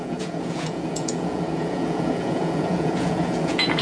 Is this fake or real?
fake